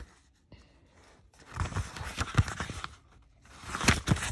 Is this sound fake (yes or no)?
no